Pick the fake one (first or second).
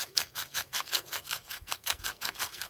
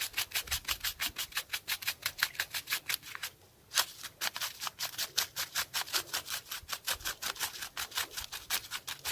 first